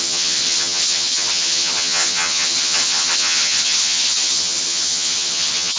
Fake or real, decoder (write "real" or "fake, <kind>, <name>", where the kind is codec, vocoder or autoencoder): fake, vocoder, HiFi-GAN